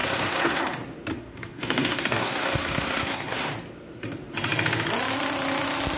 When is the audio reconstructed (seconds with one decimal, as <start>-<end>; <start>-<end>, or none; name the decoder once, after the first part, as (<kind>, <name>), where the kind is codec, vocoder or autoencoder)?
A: 0.0-0.6 (codec, SNAC); 1.1-3.5